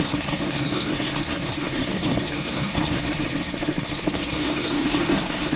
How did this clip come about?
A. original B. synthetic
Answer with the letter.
B